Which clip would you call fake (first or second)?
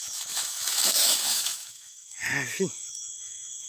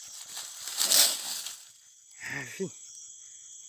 first